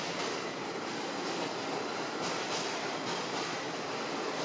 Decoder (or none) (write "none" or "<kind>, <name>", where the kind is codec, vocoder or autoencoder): vocoder, BigVGAN v2